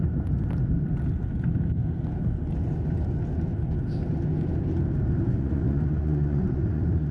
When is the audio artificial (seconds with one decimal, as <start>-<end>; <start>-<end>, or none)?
5.3-7.1